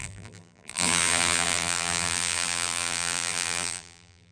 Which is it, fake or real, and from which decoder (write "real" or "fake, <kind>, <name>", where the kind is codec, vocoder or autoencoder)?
fake, vocoder, BigVGAN v2